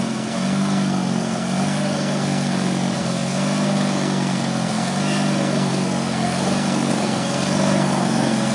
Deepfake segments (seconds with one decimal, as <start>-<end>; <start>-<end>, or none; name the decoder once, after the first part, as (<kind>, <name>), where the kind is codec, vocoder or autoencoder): 0.0-8.5 (codec, SNAC)